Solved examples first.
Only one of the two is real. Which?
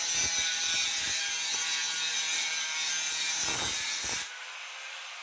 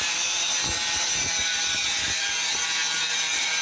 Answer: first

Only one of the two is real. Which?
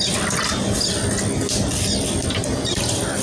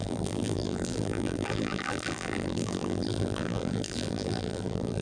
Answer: first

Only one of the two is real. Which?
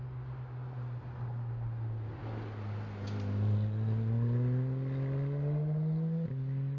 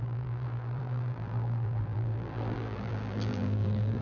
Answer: first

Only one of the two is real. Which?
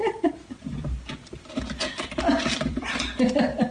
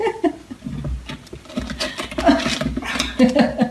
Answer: second